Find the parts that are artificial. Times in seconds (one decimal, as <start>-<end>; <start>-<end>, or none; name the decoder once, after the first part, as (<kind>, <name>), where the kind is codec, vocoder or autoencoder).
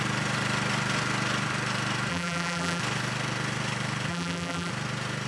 2.1-2.8 (vocoder, BigVGAN v2); 4.1-4.7